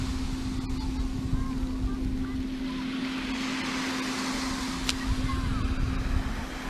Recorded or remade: recorded